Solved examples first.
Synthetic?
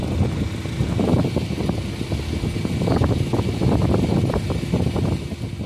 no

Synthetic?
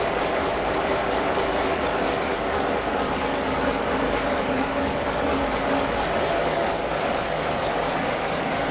yes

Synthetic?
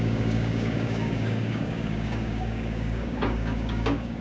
yes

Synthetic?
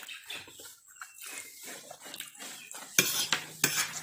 no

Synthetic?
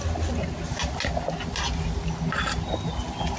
no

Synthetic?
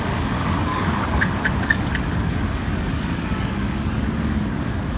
yes